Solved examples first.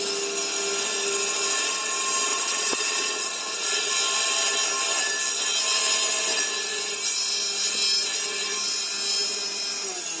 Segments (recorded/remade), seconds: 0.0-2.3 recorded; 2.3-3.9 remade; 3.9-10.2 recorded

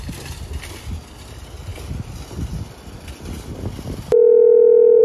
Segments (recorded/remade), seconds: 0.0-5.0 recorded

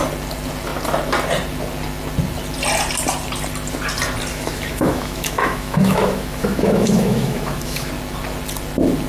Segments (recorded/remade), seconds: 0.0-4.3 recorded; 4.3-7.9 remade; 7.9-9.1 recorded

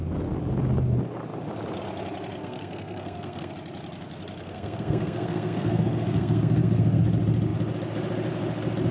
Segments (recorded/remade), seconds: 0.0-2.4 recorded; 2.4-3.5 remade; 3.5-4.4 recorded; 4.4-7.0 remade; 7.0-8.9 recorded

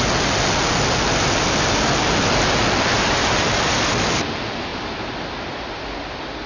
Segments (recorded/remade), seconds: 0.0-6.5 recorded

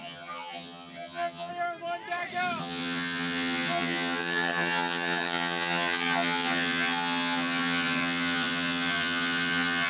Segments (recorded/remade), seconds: 0.0-1.5 remade; 1.5-2.6 recorded; 2.6-9.9 remade

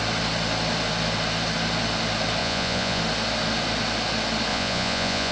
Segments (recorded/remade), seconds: 0.0-2.4 recorded; 2.4-3.0 remade; 3.0-4.5 recorded; 4.5-5.3 remade

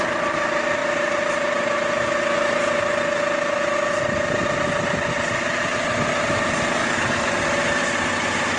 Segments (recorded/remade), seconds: 0.0-6.8 recorded; 6.8-7.4 remade; 7.4-8.6 recorded